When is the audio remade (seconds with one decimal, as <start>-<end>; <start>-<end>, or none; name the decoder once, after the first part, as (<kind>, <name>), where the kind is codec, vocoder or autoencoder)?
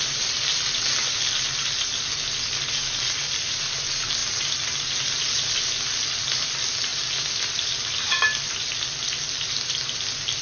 none